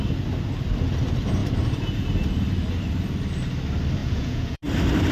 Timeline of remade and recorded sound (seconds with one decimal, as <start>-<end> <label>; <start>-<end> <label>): 0.0-4.0 recorded; 4.0-4.6 remade; 4.6-5.1 recorded